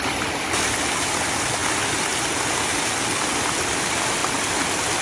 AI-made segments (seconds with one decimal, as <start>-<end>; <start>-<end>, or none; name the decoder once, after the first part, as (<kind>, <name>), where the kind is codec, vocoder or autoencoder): none